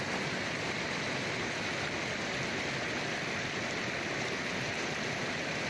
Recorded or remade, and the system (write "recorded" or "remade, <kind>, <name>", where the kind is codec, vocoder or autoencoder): recorded